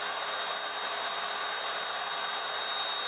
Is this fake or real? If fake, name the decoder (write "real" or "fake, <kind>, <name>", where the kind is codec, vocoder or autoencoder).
real